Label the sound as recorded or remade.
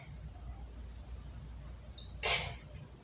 recorded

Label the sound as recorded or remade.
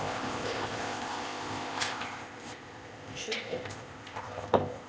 remade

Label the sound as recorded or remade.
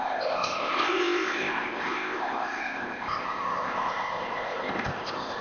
remade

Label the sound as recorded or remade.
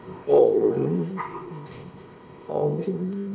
remade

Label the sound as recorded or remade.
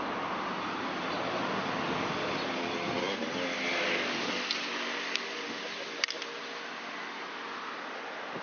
recorded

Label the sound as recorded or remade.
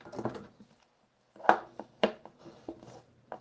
recorded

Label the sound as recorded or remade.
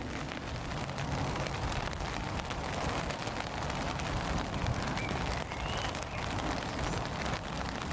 recorded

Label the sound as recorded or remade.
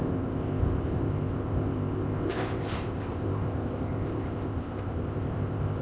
remade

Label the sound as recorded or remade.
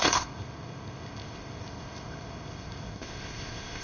remade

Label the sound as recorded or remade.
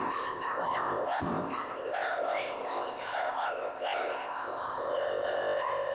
remade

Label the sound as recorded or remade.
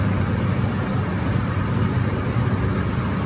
recorded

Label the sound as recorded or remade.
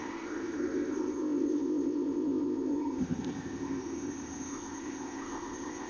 remade